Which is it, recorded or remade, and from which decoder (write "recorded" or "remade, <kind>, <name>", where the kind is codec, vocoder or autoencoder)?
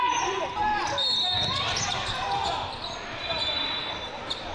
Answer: recorded